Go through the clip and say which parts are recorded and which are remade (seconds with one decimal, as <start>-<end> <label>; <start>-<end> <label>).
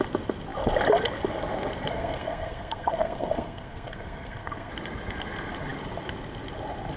0.0-1.9 recorded; 1.9-4.7 remade; 4.7-7.0 recorded